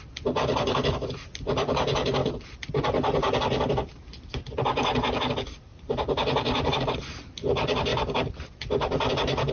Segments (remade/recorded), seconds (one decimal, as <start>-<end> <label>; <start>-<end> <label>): 0.0-9.5 recorded